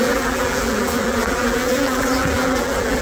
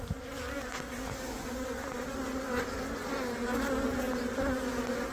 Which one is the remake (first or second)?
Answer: first